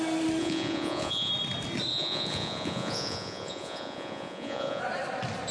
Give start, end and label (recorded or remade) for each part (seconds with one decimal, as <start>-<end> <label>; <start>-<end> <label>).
0.0-0.4 recorded; 0.4-1.3 remade; 1.3-1.9 recorded; 1.9-4.8 remade; 4.8-5.5 recorded